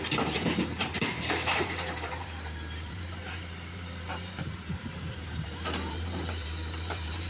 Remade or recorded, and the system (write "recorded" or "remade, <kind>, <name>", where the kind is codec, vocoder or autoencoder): remade, vocoder, BigVGAN v2